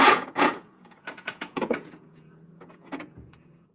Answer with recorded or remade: remade